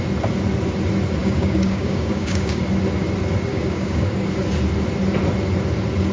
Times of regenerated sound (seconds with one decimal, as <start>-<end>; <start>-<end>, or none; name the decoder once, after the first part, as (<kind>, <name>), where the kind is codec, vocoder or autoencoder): 1.2-2.6 (codec, DAC); 3.5-4.3